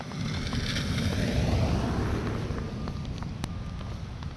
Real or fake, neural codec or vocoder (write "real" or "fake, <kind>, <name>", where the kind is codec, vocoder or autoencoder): real